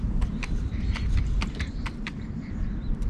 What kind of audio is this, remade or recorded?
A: remade